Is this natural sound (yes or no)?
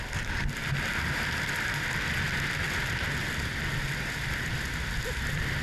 yes